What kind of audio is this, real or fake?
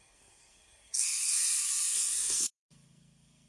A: fake